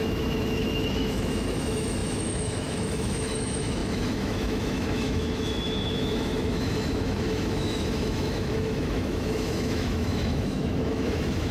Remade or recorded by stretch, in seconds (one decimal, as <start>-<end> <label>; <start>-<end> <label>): 0.0-11.5 remade